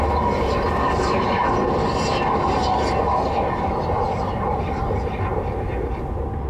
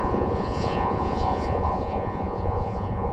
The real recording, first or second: first